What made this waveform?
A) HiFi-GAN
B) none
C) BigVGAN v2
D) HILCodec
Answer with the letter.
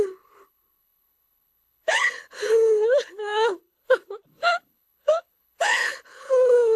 D